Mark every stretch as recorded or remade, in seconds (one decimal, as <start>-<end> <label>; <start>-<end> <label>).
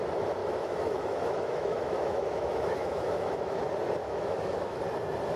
0.0-0.4 recorded; 0.4-3.6 remade; 3.6-4.0 recorded; 4.0-4.8 remade; 4.8-5.4 recorded